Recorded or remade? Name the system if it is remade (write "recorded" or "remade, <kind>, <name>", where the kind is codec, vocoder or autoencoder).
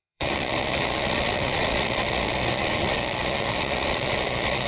remade, vocoder, Vocos